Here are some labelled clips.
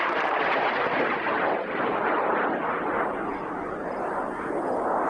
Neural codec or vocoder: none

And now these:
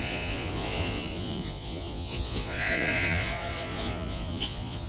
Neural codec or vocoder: vocoder, Vocos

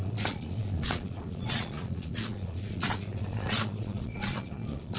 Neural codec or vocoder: vocoder, Vocos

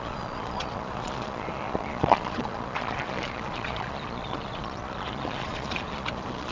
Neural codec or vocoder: vocoder, Vocos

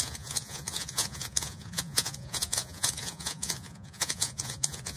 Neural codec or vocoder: vocoder, Vocos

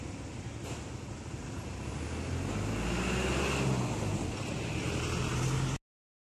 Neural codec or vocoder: none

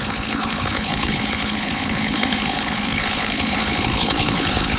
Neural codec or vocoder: codec, HILCodec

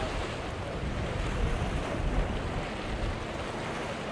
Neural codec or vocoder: none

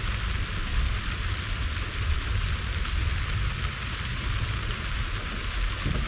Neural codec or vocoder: none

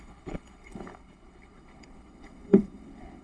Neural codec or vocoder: codec, HILCodec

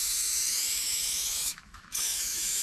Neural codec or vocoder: autoencoder, DAC-VAE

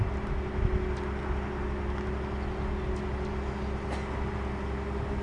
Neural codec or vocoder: none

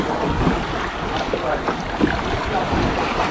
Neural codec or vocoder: none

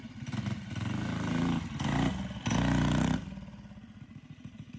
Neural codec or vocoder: none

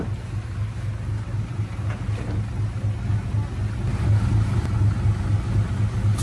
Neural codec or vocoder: none